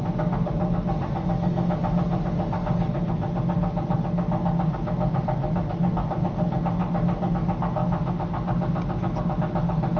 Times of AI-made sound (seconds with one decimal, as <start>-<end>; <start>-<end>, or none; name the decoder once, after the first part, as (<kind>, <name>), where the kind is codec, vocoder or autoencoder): none